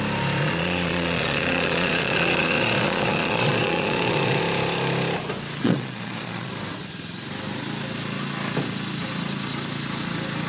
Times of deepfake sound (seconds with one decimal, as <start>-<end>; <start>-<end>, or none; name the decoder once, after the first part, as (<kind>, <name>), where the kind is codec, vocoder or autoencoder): 0.4-4.4 (vocoder, Vocos); 5.6-6.5